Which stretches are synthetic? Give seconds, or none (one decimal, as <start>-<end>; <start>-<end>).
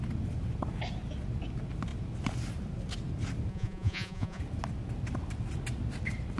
3.5-4.4